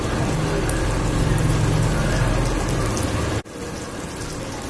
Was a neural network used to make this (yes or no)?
no